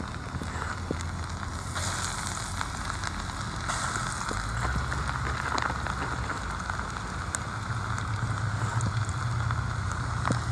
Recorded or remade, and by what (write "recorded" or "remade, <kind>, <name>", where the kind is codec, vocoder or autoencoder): recorded